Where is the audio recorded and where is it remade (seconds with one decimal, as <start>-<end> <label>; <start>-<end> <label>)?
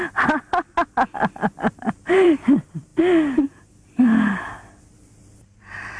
0.0-1.7 recorded; 1.7-2.9 remade; 2.9-4.8 recorded; 4.8-6.0 remade